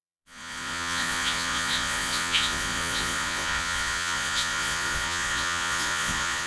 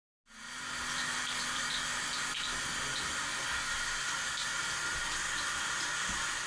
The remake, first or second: first